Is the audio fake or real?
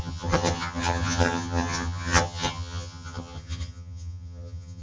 fake